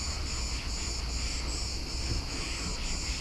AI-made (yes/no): no